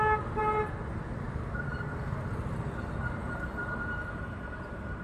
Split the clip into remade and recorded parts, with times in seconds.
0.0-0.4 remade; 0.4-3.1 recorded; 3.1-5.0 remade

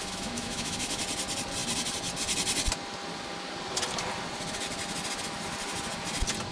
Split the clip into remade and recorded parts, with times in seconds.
0.0-1.0 remade; 1.0-6.5 recorded

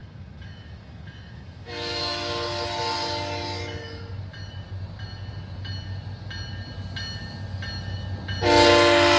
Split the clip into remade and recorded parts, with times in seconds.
0.0-2.0 remade; 2.0-9.2 recorded

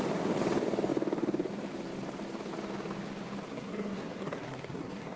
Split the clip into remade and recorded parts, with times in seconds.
0.0-3.5 recorded; 3.5-5.2 remade